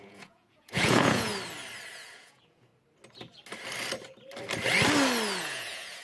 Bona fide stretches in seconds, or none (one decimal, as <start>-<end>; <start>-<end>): 1.3-1.9; 2.7-5.4